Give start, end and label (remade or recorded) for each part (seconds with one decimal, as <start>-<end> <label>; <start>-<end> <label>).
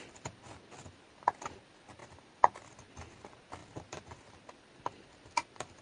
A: 0.0-2.0 recorded; 2.0-2.8 remade; 2.8-3.6 recorded; 3.6-5.8 remade